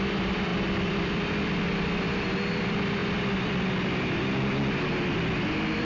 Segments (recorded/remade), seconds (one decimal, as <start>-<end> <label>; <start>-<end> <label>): 0.0-3.0 remade; 3.0-5.8 recorded